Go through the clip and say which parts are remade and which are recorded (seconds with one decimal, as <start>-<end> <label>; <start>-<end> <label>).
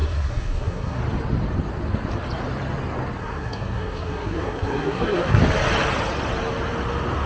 0.0-1.0 remade; 1.0-3.2 recorded; 3.2-5.4 remade; 5.4-7.3 recorded